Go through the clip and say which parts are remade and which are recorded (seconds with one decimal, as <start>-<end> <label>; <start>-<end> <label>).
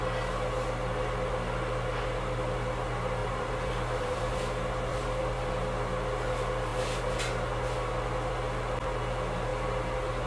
0.0-3.2 recorded; 3.2-4.4 remade; 4.4-4.9 recorded; 4.9-5.5 remade; 5.5-10.3 recorded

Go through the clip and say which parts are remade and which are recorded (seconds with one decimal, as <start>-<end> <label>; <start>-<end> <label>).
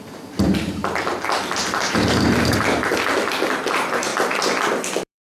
0.0-0.8 remade; 0.8-1.9 recorded; 1.9-2.9 remade; 2.9-3.6 recorded; 3.6-4.1 remade; 4.1-5.0 recorded; 5.0-5.4 remade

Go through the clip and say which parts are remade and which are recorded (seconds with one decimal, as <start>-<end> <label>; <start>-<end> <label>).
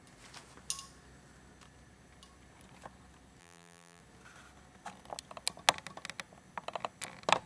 0.0-3.4 recorded; 3.4-4.0 remade; 4.0-7.5 recorded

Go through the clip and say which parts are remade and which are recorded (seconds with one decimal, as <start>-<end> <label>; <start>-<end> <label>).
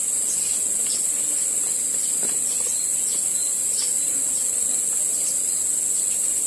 0.0-6.5 recorded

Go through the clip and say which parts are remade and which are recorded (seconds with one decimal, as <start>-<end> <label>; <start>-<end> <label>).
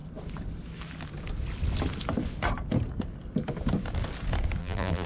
0.0-4.6 recorded; 4.6-5.1 remade